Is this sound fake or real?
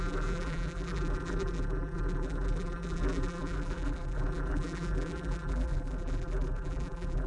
fake